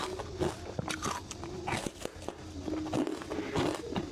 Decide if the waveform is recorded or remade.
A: recorded